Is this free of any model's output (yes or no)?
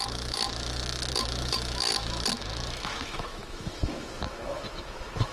no